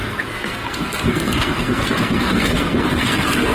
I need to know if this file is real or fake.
fake